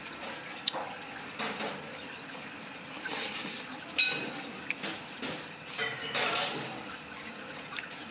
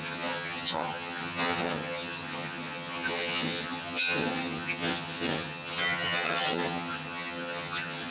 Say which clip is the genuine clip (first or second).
first